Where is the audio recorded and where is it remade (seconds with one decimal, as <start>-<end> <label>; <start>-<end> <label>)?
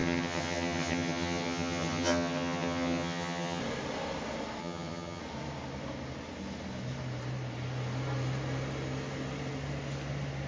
0.0-3.6 remade; 3.6-4.6 recorded; 4.6-5.2 remade; 5.2-10.5 recorded